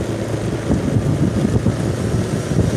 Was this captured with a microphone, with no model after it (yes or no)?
yes